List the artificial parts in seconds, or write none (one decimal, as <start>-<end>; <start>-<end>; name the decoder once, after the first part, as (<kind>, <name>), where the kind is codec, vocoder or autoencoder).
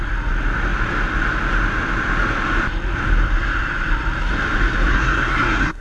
4.9-5.8 (codec, SNAC)